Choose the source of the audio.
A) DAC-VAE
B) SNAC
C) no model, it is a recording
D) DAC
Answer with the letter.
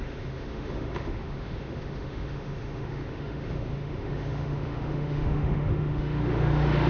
A